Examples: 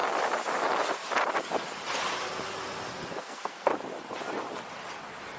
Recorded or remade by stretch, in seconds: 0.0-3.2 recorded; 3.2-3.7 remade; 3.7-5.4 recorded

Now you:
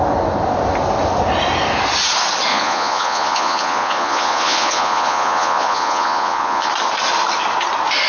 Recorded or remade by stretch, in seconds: 0.0-2.5 recorded; 2.5-6.7 remade; 6.7-8.1 recorded